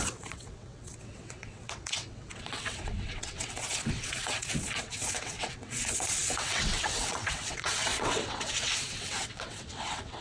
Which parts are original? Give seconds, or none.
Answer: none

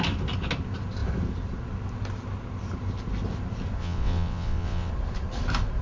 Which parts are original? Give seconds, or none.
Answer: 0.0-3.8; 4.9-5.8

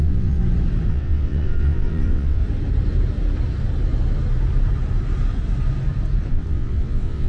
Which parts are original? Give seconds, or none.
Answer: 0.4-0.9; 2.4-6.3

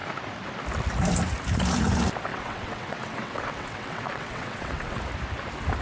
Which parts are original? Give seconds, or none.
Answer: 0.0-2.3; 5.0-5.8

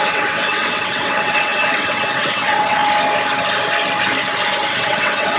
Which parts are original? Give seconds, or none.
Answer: 2.8-4.7

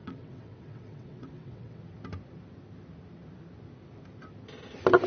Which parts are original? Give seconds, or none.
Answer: 1.8-5.1